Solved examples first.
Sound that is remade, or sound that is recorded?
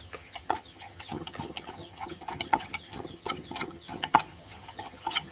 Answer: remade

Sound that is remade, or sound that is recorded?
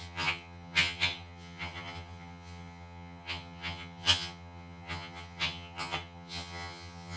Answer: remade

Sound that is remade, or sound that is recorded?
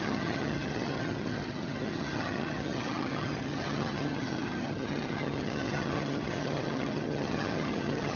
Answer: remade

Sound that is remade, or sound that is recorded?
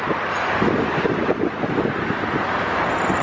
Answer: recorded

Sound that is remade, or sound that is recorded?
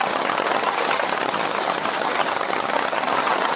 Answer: remade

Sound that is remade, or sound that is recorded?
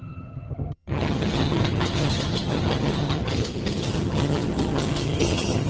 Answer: remade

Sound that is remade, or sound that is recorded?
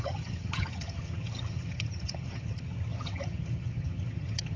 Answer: remade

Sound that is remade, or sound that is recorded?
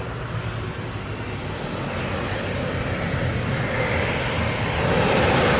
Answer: recorded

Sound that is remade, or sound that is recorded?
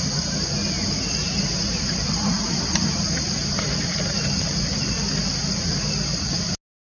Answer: recorded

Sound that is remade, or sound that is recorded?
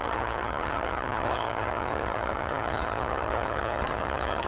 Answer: remade